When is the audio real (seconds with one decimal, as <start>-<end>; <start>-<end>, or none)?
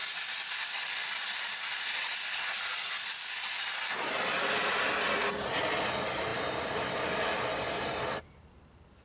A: 0.0-9.0